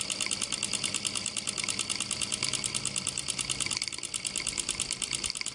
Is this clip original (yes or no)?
yes